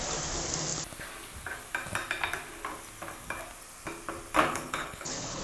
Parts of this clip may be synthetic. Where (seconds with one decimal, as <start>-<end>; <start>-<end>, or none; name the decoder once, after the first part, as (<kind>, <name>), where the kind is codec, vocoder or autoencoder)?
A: 4.5-5.4 (codec, HILCodec)